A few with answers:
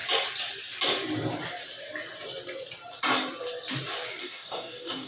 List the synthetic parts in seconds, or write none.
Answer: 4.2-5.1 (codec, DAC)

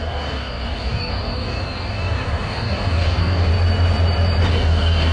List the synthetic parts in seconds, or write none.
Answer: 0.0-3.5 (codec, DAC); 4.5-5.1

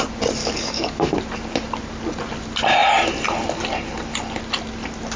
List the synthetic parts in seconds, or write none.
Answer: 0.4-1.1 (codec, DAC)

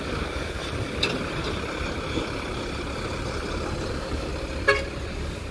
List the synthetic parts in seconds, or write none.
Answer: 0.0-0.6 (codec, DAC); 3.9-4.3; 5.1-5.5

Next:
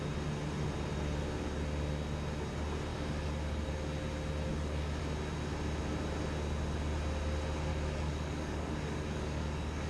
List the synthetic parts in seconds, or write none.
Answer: 2.9-3.7 (codec, DAC); 4.5-5.0; 7.7-9.9